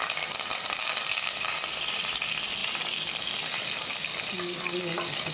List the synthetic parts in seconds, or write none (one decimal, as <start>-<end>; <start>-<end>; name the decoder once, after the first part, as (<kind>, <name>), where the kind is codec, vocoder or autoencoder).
none